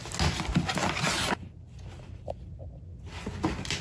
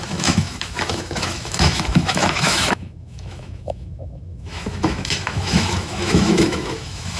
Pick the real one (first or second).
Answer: first